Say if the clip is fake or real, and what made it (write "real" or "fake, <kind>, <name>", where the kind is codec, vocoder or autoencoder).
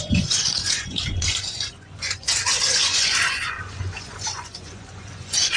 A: fake, vocoder, Vocos